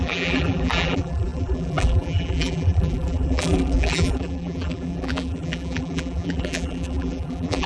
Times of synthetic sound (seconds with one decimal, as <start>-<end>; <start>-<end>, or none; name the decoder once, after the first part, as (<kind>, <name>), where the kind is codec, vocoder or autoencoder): 0.0-7.7 (vocoder, BigVGAN v2)